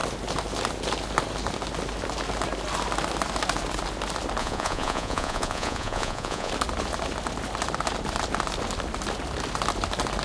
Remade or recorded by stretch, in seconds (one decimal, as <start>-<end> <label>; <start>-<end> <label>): 0.0-4.4 recorded; 4.4-6.5 remade; 6.5-10.2 recorded